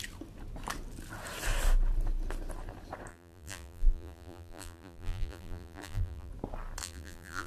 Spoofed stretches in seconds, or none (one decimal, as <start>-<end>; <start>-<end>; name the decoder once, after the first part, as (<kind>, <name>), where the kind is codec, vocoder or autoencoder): 3.1-6.3 (vocoder, BigVGAN v2); 6.8-7.5